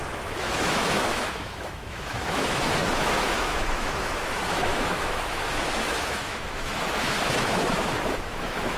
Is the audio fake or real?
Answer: fake